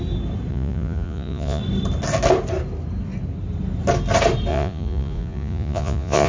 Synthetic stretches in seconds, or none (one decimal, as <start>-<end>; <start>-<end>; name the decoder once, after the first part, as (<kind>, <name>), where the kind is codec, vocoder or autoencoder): 0.5-1.6 (vocoder, Vocos); 4.5-6.3